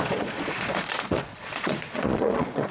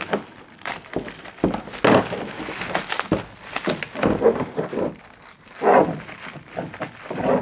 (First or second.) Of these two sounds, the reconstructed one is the first